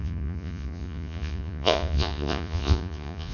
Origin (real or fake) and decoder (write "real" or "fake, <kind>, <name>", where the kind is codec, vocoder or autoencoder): fake, vocoder, Vocos